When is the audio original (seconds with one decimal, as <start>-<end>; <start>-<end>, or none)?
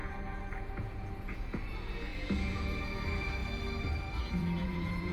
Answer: 3.4-4.2